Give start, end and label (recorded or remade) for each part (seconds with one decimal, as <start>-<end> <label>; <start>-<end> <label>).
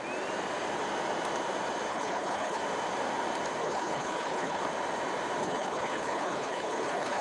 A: 0.0-1.9 recorded; 1.9-2.6 remade; 2.6-3.6 recorded; 3.6-4.6 remade; 4.6-5.4 recorded; 5.4-7.2 remade